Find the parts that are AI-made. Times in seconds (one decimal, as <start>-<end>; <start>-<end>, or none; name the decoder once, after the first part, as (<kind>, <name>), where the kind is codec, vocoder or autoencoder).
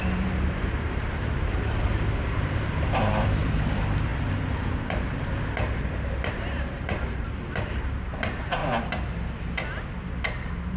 0.0-8.6 (vocoder, BigVGAN v2)